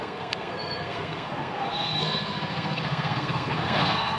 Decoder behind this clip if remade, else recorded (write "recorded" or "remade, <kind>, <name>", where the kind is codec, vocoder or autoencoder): remade, codec, SNAC